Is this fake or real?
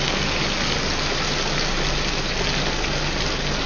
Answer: real